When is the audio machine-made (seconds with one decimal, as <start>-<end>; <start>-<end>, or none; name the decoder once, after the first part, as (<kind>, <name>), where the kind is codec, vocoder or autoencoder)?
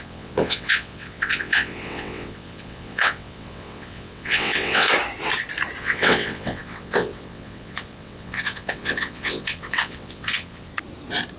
0.0-4.9 (vocoder, WaveNeXt); 5.8-10.7